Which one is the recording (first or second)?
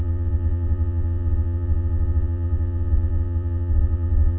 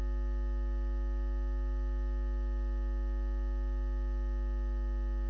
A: second